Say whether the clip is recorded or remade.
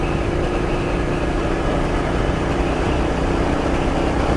recorded